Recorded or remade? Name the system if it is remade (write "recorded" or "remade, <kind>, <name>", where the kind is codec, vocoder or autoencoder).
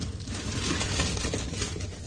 recorded